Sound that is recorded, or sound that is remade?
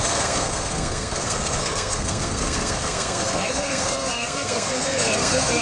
remade